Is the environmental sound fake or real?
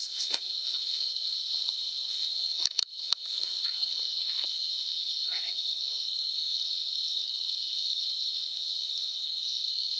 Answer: fake